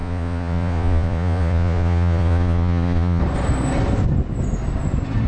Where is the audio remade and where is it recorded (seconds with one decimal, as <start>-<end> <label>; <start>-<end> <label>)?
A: 0.0-3.2 remade; 3.2-5.3 recorded